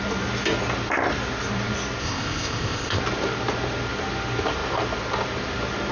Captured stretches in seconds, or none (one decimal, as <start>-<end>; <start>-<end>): 0.0-2.0; 3.0-5.9